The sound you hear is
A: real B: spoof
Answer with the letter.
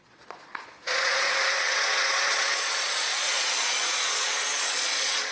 B